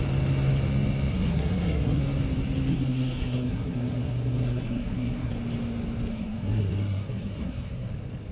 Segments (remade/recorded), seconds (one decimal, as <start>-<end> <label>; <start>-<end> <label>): 0.0-1.1 recorded; 1.1-2.0 remade; 2.0-2.7 recorded; 2.7-5.3 remade; 5.3-6.1 recorded; 6.1-7.9 remade; 7.9-8.3 recorded

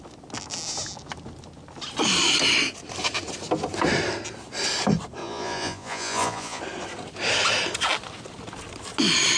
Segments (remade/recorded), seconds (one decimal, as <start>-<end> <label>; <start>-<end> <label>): 0.0-5.2 recorded; 5.2-6.6 remade; 6.6-9.4 recorded